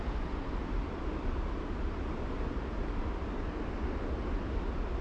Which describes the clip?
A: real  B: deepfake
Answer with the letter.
B